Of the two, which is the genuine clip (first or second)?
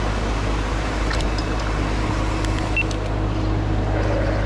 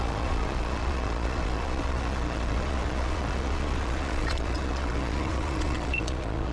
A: first